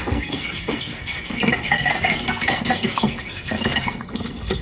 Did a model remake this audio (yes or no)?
yes